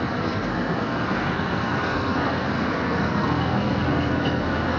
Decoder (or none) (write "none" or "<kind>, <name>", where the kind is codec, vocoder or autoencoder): codec, SNAC